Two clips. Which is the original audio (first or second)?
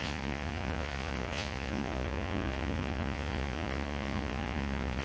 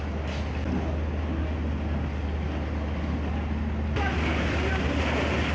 second